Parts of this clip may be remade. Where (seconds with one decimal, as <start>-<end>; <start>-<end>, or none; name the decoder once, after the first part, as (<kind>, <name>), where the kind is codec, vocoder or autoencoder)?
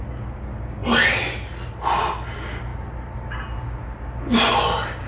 none